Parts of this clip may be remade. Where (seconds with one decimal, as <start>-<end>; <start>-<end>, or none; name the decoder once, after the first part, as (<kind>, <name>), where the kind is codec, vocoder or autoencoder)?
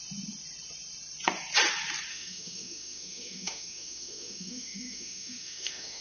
2.1-6.0 (autoencoder, DAC-VAE)